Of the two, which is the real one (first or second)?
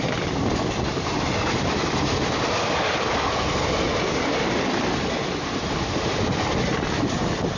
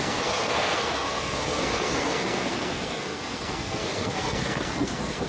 first